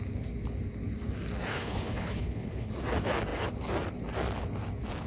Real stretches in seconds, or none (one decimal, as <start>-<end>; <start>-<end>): 0.0-1.5; 2.7-5.1